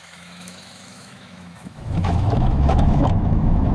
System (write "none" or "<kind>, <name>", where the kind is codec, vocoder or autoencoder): autoencoder, DAC-VAE